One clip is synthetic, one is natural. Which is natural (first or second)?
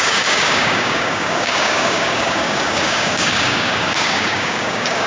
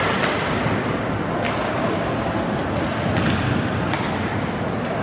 second